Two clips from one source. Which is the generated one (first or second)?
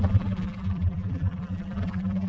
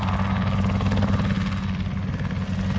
first